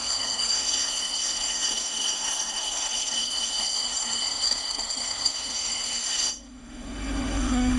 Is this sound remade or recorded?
remade